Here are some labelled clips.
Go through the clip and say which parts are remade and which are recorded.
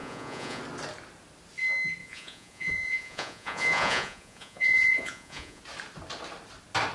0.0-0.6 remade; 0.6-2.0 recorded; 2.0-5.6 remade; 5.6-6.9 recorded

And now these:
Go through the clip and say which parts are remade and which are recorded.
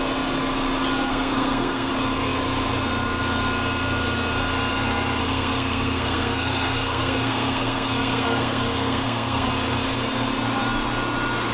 0.0-1.1 recorded; 1.1-1.9 remade; 1.9-5.2 recorded; 5.2-9.5 remade; 9.5-11.5 recorded